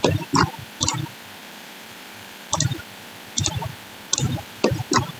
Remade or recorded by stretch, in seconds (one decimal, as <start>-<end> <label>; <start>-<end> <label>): 0.0-1.4 recorded; 1.4-2.8 remade; 2.8-4.1 recorded; 4.1-4.7 remade; 4.7-5.2 recorded